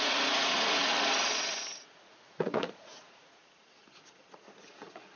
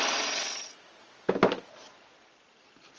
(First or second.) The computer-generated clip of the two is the first